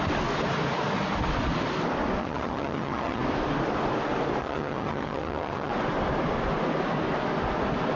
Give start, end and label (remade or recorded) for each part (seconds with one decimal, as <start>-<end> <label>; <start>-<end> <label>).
0.0-2.2 recorded; 2.2-3.2 remade; 3.2-4.4 recorded; 4.4-5.7 remade; 5.7-8.0 recorded

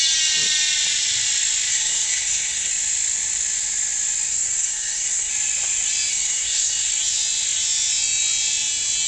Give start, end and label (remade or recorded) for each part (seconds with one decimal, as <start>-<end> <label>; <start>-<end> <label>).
0.0-1.7 recorded; 1.7-2.7 remade; 2.7-4.3 recorded; 4.3-5.3 remade; 5.3-6.1 recorded; 6.1-6.9 remade; 6.9-9.1 recorded